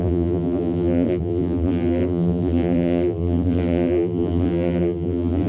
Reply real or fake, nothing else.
fake